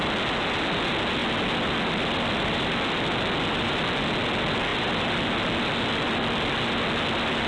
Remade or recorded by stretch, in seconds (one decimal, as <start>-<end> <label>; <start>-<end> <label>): 0.0-1.2 recorded; 1.2-3.8 remade; 3.8-7.5 recorded